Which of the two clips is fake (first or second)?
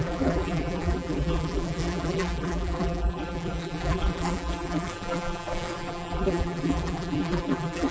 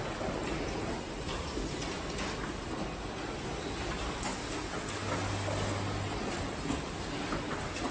first